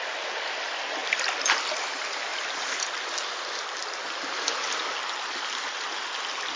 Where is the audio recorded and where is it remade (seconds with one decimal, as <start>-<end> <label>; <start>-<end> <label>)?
0.0-1.0 recorded; 1.0-1.7 remade; 1.7-2.3 recorded; 2.3-2.9 remade; 2.9-3.8 recorded; 3.8-4.8 remade; 4.8-6.6 recorded